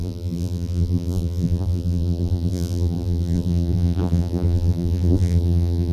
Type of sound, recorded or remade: remade